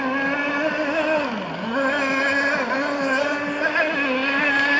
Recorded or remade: recorded